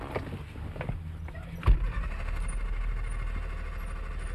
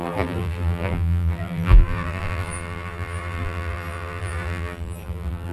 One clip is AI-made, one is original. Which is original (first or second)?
first